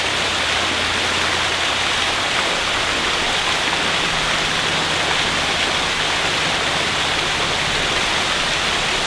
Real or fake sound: real